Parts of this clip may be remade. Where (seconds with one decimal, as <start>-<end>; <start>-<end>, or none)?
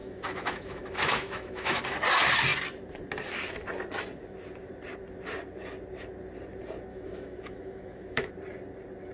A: 0.0-1.8; 6.9-8.3